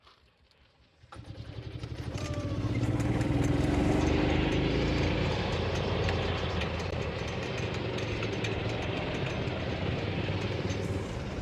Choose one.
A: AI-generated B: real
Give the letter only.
A